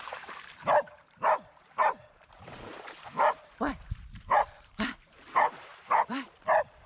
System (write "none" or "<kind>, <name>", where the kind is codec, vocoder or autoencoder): vocoder, BigVGAN v2